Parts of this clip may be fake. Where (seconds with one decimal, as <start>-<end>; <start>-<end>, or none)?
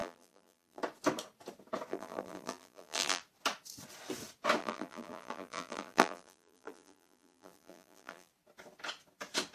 0.0-0.8; 1.9-3.2; 4.6-8.3